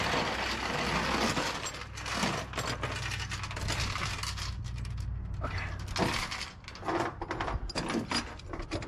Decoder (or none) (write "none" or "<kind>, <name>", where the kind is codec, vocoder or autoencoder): none